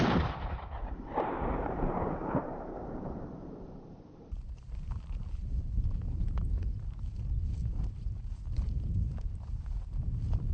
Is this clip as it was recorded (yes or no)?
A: no